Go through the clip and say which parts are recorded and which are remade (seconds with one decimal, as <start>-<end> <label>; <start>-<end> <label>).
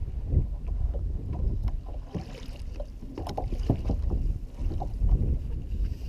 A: 0.0-6.1 remade